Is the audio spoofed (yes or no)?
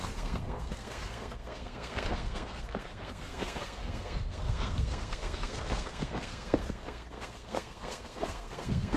yes